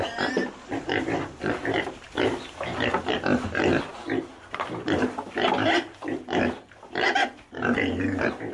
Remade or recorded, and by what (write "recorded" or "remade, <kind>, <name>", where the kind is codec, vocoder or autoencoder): recorded